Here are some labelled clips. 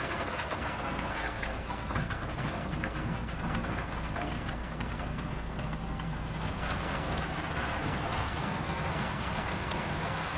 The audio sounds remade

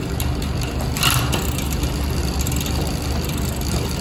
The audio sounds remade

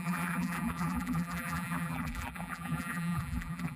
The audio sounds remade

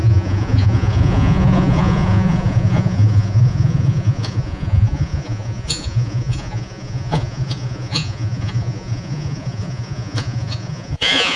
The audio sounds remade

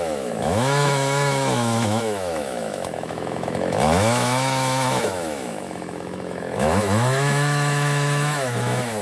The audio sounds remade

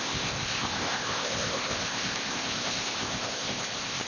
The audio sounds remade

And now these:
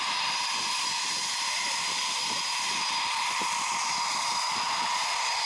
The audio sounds remade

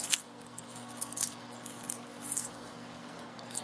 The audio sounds remade